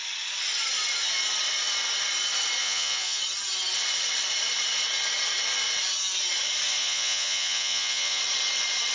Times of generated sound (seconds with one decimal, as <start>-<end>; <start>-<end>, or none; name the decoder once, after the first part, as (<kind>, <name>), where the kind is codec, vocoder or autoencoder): 2.6-3.2 (vocoder, Vocos); 6.8-8.2